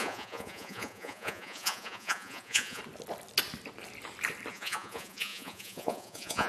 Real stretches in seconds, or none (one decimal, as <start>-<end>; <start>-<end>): 2.8-4.5